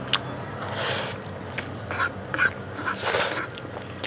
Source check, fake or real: real